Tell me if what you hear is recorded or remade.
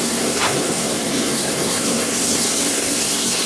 remade